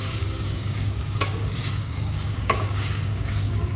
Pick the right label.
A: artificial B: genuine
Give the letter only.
A